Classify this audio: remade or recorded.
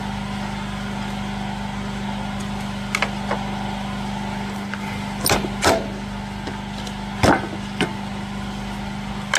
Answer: recorded